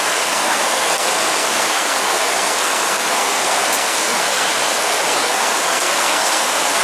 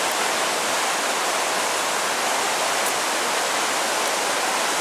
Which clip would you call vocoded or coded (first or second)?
first